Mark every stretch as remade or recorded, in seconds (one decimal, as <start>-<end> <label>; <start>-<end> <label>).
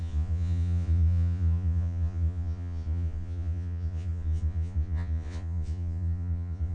0.0-6.7 remade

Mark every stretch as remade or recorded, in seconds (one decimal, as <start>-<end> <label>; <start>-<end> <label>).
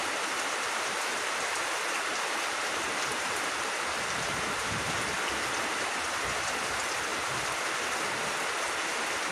0.0-5.0 remade; 5.0-9.3 recorded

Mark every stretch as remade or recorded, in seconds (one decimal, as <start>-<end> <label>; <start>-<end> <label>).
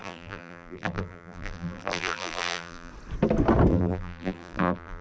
0.0-2.9 remade; 2.9-3.7 recorded; 3.7-5.0 remade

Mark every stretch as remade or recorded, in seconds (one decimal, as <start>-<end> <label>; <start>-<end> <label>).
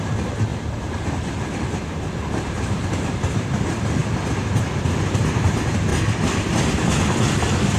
0.0-0.5 remade; 0.5-1.8 recorded; 1.8-4.0 remade; 4.0-4.6 recorded; 4.6-5.9 remade; 5.9-7.8 recorded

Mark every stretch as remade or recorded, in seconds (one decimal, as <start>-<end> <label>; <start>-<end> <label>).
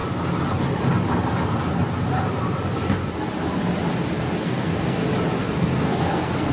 0.0-4.4 recorded; 4.4-5.0 remade; 5.0-5.4 recorded; 5.4-6.5 remade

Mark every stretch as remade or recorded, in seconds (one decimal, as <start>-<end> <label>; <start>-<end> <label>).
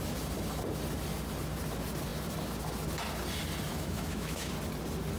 0.0-3.7 recorded; 3.7-4.5 remade; 4.5-5.2 recorded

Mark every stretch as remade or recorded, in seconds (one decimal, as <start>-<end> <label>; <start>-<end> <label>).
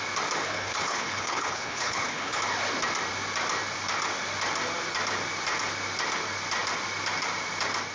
0.0-0.4 recorded; 0.4-2.4 remade; 2.4-7.9 recorded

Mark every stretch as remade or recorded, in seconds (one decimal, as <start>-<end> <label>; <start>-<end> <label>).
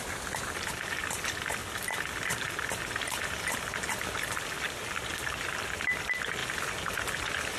0.0-1.6 recorded; 1.6-5.7 remade; 5.7-6.4 recorded; 6.4-7.1 remade; 7.1-7.6 recorded